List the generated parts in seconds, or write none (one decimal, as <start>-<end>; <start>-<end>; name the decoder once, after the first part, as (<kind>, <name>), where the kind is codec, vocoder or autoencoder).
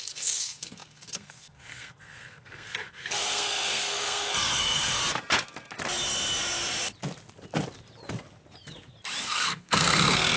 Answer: 0.0-5.0 (codec, SNAC); 9.2-10.4